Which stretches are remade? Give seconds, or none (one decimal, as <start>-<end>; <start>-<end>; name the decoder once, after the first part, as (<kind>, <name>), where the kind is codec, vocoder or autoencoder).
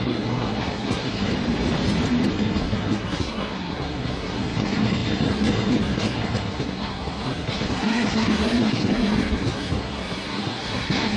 0.0-1.3 (codec, SNAC); 2.3-11.2